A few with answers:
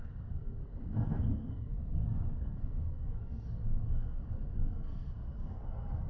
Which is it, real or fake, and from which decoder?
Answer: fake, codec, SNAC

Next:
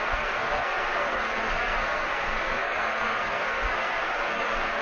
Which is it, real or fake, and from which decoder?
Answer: fake, codec, SNAC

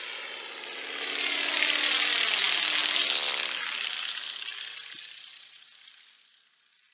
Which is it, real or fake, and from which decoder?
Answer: real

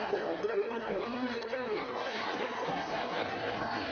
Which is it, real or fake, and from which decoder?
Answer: fake, codec, SNAC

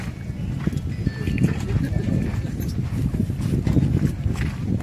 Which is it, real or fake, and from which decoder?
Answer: real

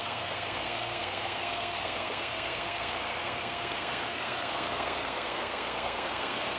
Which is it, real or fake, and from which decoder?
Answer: fake, codec, SNAC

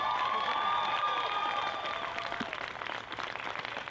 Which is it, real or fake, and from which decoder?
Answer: real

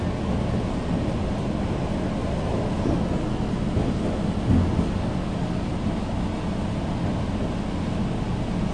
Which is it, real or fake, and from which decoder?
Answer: real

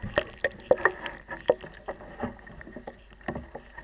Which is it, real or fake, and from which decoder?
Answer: real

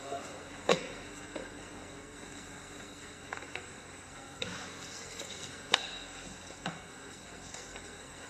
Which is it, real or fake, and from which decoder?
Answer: fake, codec, SNAC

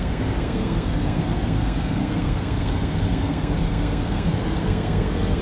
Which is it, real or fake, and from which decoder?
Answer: fake, codec, SNAC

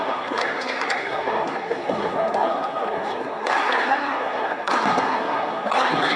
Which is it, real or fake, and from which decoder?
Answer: fake, codec, SNAC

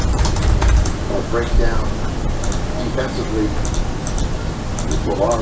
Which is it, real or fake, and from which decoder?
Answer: real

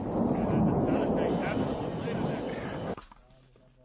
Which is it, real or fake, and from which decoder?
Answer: real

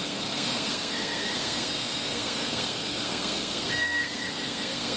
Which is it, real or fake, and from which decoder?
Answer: fake, codec, SNAC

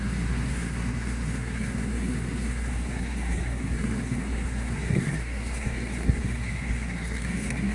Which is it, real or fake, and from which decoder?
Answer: fake, codec, SNAC